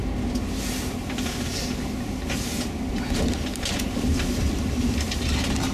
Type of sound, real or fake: real